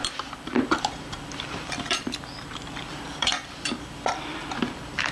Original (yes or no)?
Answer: no